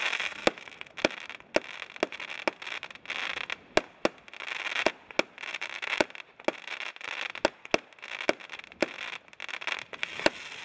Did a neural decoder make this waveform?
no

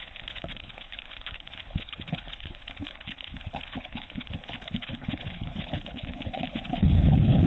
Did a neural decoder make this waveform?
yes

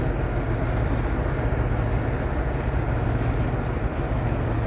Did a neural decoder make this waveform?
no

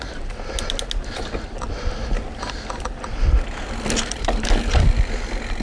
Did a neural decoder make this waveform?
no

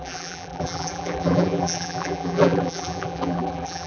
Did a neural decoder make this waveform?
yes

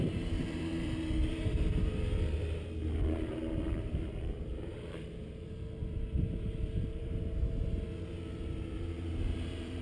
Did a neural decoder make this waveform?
yes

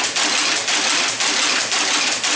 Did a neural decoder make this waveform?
no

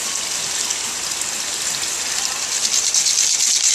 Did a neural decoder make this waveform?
no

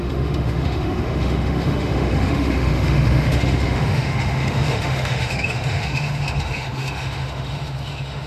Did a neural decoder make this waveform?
yes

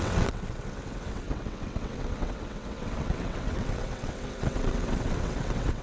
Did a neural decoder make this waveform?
yes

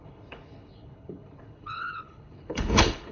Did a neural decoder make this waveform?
yes